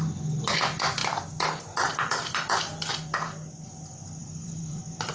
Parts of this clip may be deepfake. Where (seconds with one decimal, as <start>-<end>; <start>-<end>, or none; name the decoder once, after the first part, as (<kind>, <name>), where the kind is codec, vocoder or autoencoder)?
4.2-5.1 (vocoder, BigVGAN v2)